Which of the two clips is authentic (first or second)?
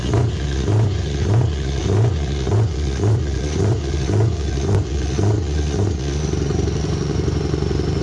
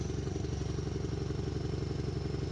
second